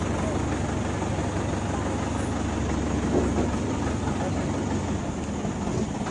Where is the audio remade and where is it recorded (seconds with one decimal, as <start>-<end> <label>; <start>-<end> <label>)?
0.0-6.1 recorded